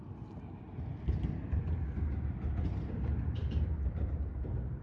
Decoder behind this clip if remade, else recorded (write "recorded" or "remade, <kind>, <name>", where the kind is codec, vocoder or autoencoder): recorded